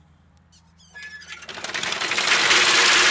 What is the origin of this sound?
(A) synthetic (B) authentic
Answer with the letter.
B